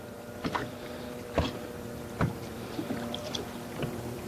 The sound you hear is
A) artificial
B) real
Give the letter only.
A